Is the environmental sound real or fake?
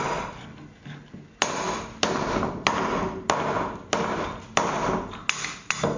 real